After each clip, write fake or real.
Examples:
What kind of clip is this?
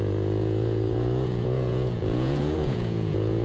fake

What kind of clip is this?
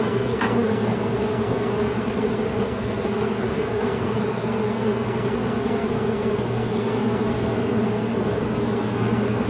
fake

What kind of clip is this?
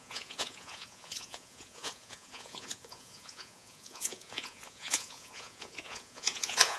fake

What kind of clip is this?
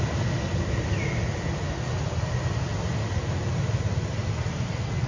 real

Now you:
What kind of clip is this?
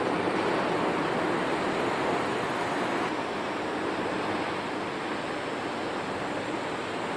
real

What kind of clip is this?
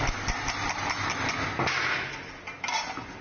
real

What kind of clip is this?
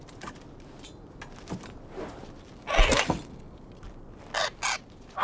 real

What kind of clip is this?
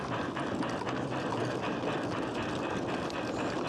real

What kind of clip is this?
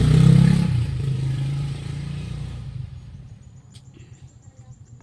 fake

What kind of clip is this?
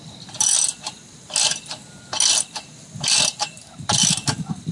real